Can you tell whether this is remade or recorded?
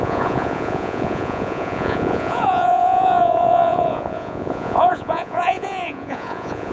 remade